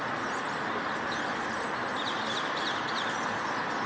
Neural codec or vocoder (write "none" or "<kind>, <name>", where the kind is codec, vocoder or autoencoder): none